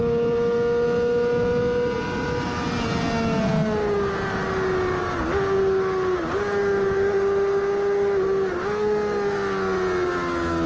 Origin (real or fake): real